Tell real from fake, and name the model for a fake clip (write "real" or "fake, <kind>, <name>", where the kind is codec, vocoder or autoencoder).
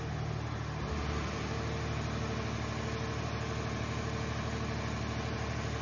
real